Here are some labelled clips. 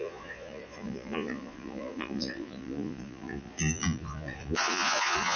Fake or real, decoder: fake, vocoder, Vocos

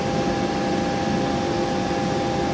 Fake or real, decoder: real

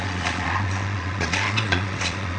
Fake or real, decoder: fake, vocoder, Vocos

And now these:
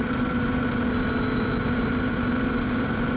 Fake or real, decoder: real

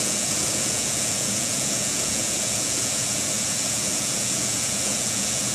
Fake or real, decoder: fake, vocoder, Vocos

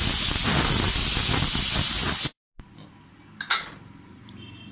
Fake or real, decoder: real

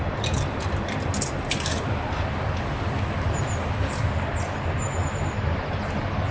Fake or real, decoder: real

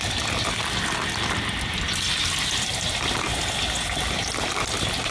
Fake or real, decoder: real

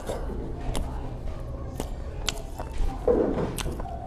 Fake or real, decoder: real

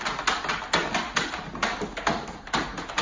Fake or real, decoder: real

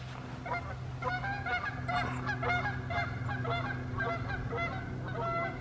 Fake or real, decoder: real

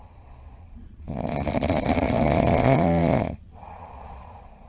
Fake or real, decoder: fake, vocoder, Vocos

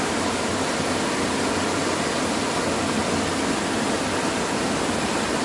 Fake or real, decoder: real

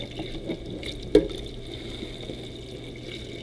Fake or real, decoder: real